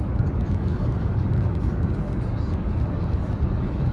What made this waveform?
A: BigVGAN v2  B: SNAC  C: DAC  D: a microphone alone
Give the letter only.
C